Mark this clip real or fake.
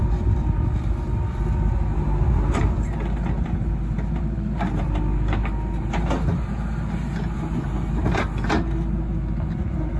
real